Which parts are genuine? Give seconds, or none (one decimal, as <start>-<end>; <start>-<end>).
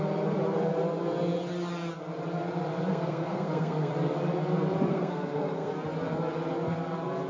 0.0-2.9; 3.9-4.9; 5.7-7.3